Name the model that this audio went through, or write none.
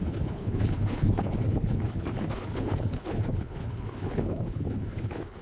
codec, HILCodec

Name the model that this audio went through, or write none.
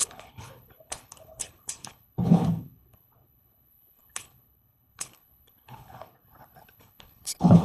codec, HILCodec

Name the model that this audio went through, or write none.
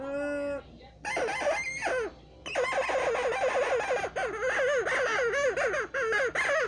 none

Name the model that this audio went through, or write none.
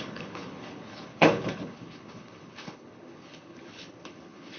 codec, HILCodec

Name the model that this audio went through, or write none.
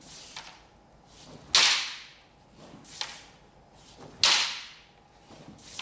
none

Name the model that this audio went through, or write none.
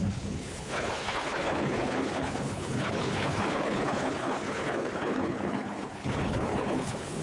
codec, HILCodec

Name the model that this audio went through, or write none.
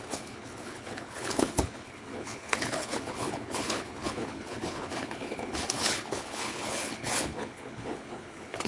codec, HILCodec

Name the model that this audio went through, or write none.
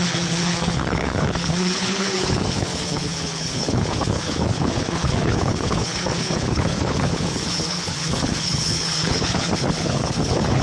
codec, HILCodec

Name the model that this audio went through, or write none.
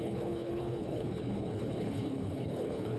codec, HILCodec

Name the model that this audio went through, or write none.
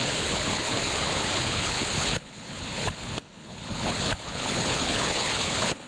codec, HILCodec